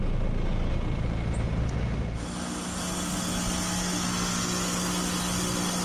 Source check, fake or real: real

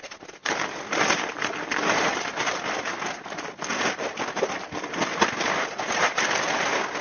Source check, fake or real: real